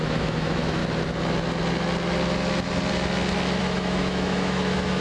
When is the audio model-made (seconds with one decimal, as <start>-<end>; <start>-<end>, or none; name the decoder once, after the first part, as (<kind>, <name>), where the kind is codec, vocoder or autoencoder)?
0.0-0.8 (autoencoder, DAC-VAE); 3.6-5.0